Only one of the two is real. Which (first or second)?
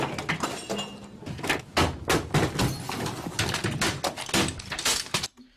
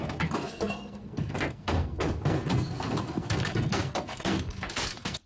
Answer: first